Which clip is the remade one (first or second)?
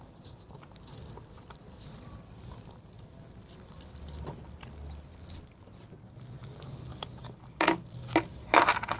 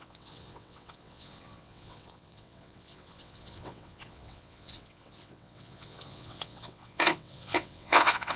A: second